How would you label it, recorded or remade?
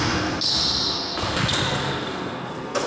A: remade